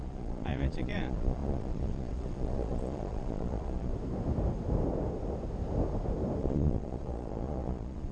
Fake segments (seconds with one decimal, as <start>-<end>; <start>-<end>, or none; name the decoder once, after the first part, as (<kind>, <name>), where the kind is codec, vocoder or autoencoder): 0.0-3.9 (vocoder, Vocos); 6.4-8.1